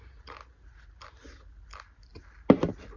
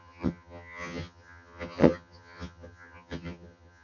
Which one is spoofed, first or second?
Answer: second